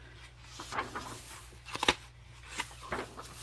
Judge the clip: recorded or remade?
recorded